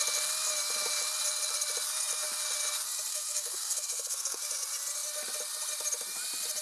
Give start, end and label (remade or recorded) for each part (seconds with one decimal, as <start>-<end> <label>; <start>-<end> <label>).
0.0-3.1 recorded; 3.1-4.4 remade; 4.4-6.6 recorded